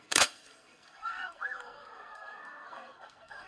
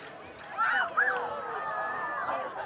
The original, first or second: second